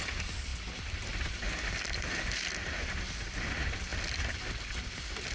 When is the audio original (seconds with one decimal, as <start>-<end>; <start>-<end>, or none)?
0.0-5.3